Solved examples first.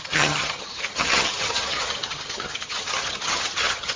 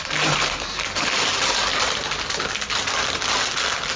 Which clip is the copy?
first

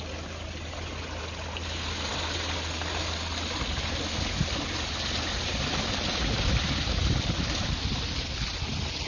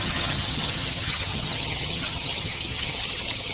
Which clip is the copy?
second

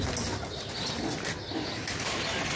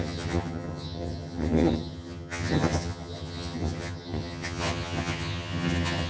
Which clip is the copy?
second